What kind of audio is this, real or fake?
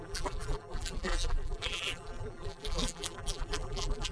fake